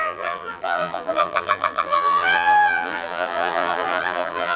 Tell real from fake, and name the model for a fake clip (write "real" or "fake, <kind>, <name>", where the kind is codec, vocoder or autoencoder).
fake, vocoder, BigVGAN v2